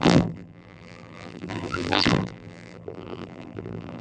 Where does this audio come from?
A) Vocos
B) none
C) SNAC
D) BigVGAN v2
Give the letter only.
D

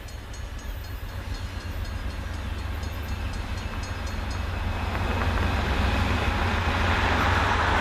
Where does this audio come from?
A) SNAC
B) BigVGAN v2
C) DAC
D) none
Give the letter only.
D